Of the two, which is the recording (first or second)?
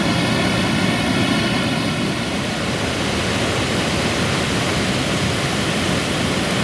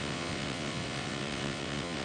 first